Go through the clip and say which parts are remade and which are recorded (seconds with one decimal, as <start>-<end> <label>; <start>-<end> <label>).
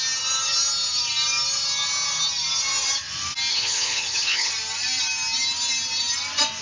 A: 0.0-3.5 recorded; 3.5-4.5 remade; 4.5-6.6 recorded